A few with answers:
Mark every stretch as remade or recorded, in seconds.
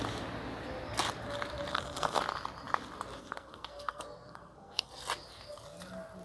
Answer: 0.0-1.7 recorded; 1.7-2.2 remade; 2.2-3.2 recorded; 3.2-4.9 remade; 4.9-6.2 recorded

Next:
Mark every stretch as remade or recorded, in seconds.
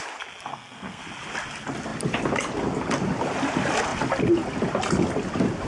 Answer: 0.0-0.5 recorded; 0.5-1.0 remade; 1.0-5.7 recorded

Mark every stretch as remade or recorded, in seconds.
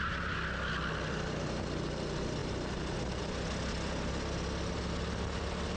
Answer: 0.0-5.8 recorded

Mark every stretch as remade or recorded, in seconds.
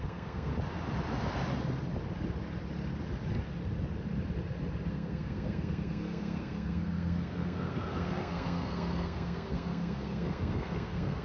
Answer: 0.0-0.5 remade; 0.5-4.9 recorded; 4.9-11.2 remade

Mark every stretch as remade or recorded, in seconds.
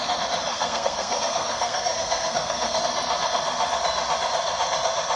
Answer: 0.0-0.5 recorded; 0.5-2.8 remade; 2.8-5.2 recorded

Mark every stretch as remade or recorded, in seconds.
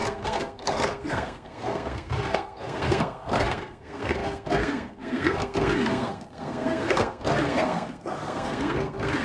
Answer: 0.0-9.2 remade